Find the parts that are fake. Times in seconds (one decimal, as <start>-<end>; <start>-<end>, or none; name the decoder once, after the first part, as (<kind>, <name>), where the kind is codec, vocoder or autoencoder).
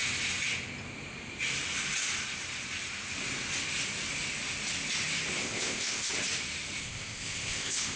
5.4-6.1 (codec, ZipCodec); 6.8-8.0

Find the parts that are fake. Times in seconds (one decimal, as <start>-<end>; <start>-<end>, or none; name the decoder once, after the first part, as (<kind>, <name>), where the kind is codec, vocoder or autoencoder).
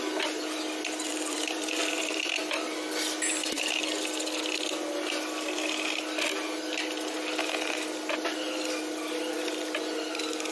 1.1-2.4 (vocoder, BigVGAN v2)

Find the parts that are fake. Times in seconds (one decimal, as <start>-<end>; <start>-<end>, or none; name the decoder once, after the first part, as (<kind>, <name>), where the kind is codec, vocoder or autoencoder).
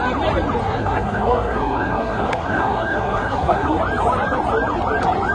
0.6-3.8 (codec, SNAC)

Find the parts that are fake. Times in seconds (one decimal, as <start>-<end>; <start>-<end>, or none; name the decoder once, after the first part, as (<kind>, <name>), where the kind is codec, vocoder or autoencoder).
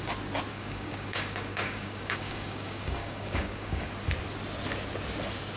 0.5-3.9 (codec, DAC)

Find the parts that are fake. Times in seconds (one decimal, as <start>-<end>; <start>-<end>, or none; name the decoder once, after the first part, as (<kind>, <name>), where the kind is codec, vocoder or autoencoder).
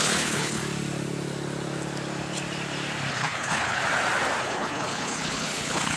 0.0-0.6 (codec, HILCodec); 3.1-3.8; 4.4-6.0